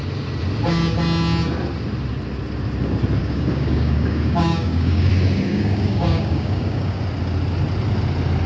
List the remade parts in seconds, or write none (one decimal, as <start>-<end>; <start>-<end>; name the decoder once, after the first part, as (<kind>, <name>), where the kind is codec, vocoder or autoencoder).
3.2-5.1 (codec, DAC); 5.5-7.0